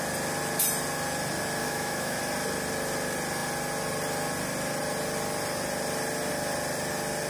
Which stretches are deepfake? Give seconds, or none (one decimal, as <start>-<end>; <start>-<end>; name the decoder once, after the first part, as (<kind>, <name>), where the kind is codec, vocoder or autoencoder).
1.6-2.2 (autoencoder, DAC-VAE)